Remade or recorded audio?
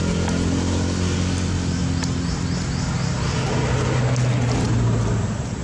recorded